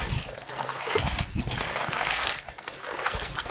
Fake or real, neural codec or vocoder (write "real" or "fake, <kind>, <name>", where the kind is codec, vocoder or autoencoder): fake, codec, SNAC